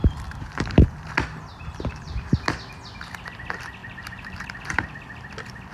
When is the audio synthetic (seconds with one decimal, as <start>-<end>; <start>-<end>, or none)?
0.0-1.1; 1.5-2.4; 3.8-4.9